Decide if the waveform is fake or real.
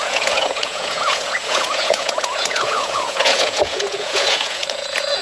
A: fake